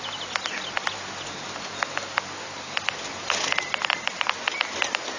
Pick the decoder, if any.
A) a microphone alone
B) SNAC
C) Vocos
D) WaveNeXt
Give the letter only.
A